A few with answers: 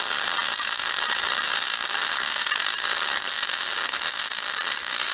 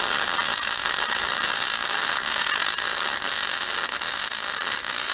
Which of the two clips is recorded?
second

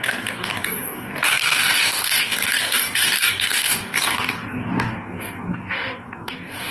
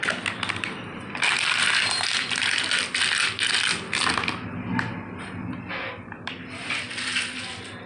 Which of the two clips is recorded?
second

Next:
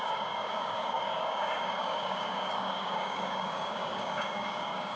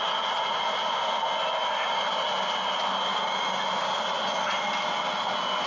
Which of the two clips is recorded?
second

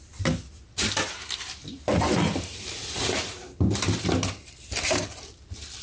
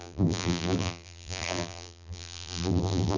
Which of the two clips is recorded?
first